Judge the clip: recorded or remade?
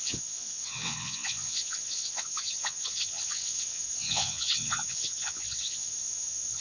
remade